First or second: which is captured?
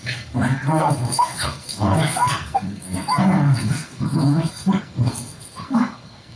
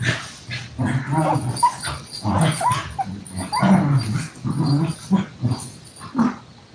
second